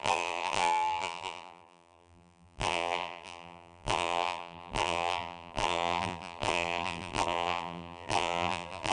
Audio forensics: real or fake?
fake